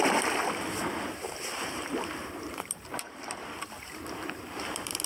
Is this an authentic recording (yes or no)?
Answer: no